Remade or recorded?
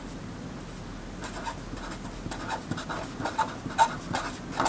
recorded